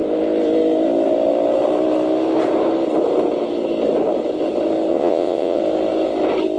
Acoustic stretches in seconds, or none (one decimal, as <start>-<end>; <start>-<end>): 0.0-4.9; 5.6-6.6